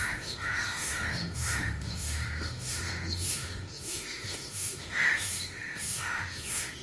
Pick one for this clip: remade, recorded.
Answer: remade